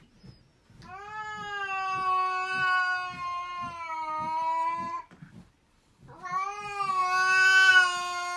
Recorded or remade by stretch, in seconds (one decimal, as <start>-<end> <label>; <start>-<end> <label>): 0.0-8.4 recorded